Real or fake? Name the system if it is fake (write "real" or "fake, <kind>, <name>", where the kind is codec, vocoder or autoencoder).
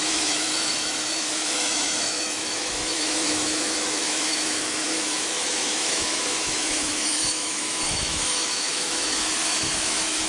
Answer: fake, autoencoder, DAC-VAE